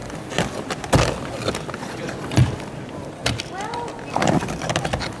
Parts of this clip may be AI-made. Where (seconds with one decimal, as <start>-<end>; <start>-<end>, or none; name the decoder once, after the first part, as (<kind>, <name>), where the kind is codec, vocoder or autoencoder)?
1.8-2.4 (vocoder, Vocos)